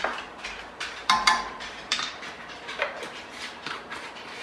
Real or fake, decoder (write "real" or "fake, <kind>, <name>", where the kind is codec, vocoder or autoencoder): fake, vocoder, BigVGAN v2